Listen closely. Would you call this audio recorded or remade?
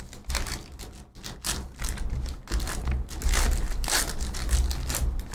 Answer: recorded